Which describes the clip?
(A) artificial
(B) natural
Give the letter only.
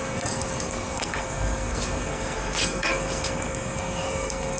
A